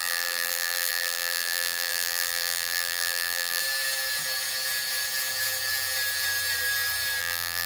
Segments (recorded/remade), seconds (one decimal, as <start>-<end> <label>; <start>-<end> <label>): 0.0-3.6 remade; 3.6-7.2 recorded; 7.2-7.7 remade